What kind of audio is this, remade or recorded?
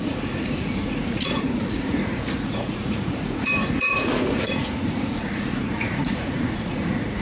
remade